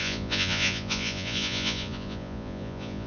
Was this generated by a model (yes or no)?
yes